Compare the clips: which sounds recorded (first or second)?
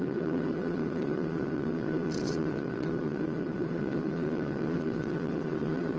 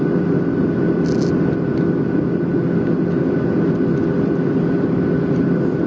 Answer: second